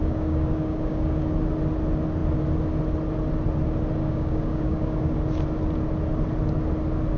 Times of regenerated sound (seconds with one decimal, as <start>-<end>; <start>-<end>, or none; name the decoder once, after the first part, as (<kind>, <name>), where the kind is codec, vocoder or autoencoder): 0.0-1.3 (codec, DAC); 4.0-5.2